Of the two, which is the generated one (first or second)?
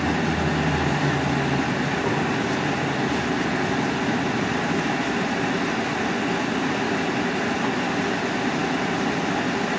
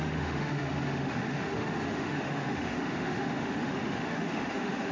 second